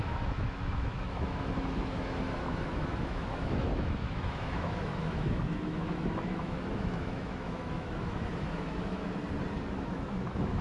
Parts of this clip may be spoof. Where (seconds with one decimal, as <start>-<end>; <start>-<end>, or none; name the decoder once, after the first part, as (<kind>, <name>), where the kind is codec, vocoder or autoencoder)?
0.0-9.2 (autoencoder, DAC-VAE); 9.7-10.6